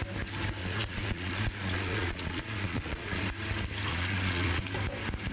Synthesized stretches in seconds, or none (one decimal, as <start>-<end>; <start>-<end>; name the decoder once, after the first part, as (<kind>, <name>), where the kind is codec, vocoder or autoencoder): 0.6-3.2 (vocoder, Vocos); 3.9-4.6